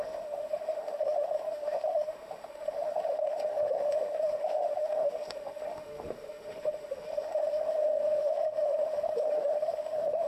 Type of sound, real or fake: fake